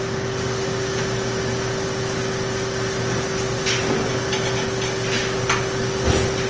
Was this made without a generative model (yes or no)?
yes